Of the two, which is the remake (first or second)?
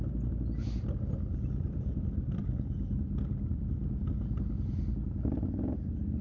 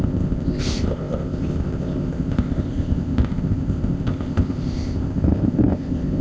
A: second